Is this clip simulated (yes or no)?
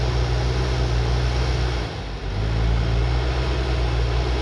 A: no